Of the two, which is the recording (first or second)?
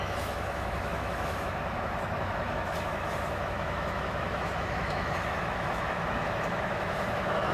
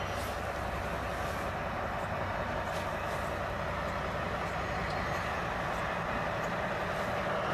second